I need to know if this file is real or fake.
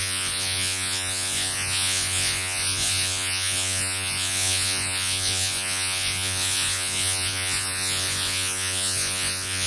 fake